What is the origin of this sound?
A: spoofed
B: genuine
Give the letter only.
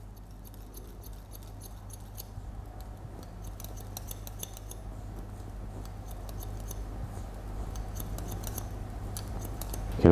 B